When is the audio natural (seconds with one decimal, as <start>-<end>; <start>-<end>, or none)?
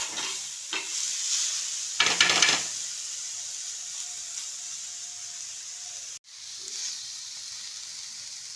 0.0-6.8; 7.4-8.6